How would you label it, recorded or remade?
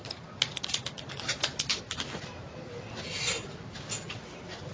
recorded